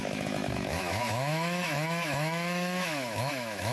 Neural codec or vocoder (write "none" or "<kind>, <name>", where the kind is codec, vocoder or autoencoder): autoencoder, DAC-VAE